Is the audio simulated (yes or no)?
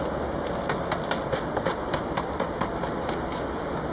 no